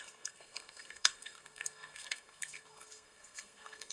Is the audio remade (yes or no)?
yes